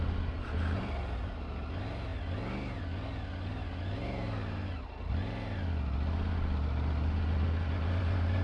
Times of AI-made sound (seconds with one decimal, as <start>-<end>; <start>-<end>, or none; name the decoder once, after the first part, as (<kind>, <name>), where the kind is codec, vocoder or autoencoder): none